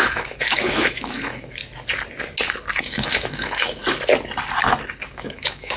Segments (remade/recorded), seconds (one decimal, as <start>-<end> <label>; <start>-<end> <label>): 0.0-1.6 remade; 1.6-2.8 recorded; 2.8-3.8 remade; 3.8-5.1 recorded; 5.1-5.8 remade

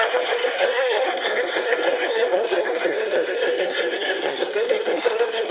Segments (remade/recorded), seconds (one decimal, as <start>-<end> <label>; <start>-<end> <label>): 0.0-5.5 remade

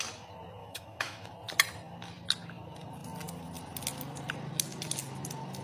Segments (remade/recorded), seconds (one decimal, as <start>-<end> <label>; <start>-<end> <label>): 0.0-0.6 recorded; 0.6-1.3 remade; 1.3-5.6 recorded

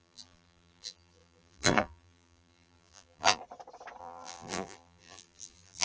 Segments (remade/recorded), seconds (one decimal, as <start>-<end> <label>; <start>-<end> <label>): 0.0-3.4 remade; 3.4-4.0 recorded; 4.0-5.8 remade